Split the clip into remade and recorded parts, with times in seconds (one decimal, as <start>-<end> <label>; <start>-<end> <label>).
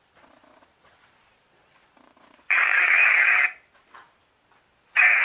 0.0-3.0 remade; 3.0-5.2 recorded